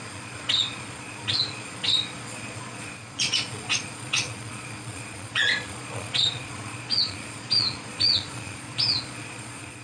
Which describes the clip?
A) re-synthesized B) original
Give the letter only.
A